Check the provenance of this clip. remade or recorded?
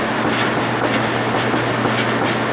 recorded